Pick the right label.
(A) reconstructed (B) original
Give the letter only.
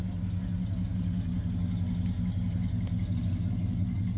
B